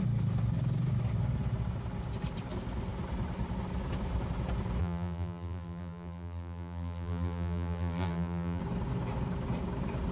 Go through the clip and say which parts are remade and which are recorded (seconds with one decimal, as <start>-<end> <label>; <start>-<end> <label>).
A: 0.0-4.8 recorded; 4.8-8.6 remade; 8.6-10.1 recorded